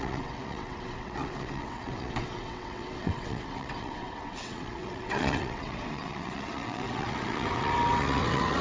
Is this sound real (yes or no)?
no